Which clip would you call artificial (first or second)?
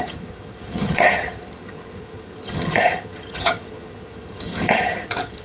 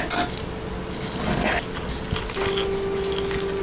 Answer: first